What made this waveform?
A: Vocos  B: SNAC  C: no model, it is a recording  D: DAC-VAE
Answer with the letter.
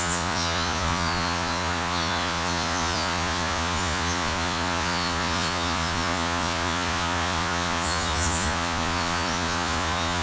A